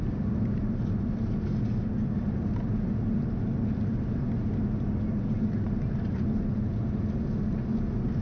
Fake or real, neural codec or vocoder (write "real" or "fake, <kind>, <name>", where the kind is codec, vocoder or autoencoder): real